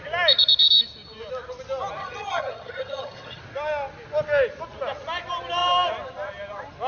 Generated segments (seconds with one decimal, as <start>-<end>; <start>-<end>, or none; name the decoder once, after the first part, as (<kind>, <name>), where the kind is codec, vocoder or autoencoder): 2.0-3.4 (vocoder, HiFi-GAN)